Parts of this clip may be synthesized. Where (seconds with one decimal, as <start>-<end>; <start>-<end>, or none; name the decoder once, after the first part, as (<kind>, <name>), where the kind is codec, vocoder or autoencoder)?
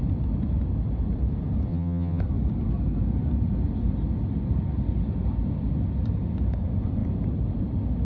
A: 1.7-2.2 (vocoder, HiFi-GAN)